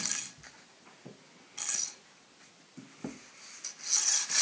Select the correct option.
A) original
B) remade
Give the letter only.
A